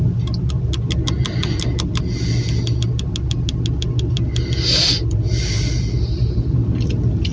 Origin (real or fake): real